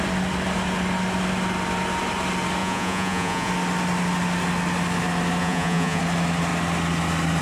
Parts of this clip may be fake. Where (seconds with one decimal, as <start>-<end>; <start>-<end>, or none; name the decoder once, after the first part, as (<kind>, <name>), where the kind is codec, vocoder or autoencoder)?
2.6-3.5 (vocoder, Vocos); 5.4-6.0